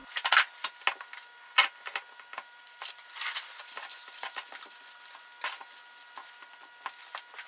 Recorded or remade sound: recorded